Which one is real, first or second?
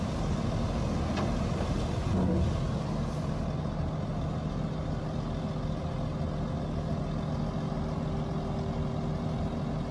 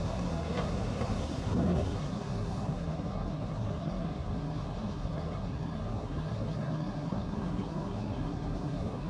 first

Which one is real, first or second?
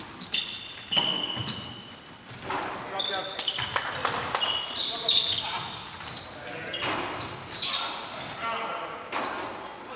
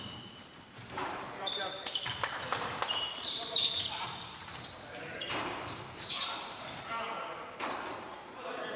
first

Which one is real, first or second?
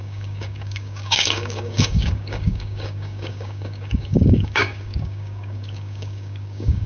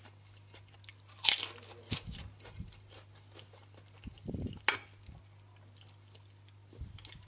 second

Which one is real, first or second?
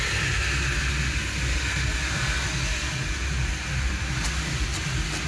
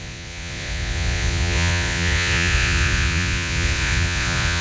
first